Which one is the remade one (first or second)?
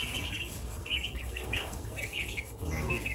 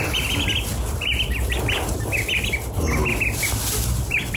first